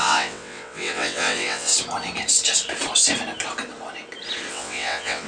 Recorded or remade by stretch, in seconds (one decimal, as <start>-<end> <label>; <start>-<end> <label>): 0.0-1.7 remade; 1.7-4.5 recorded; 4.5-5.3 remade